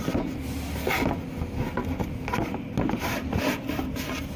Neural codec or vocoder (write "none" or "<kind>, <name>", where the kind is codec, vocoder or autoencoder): none